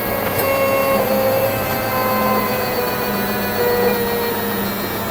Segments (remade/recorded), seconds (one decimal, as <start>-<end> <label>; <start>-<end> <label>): 0.0-5.1 recorded